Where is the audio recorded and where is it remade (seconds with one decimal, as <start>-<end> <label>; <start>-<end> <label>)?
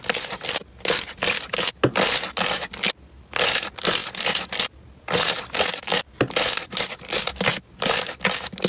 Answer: 0.0-8.7 recorded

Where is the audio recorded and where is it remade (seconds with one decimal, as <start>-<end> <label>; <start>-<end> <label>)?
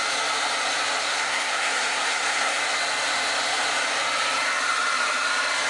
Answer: 0.0-1.0 recorded; 1.0-2.6 remade; 2.6-5.7 recorded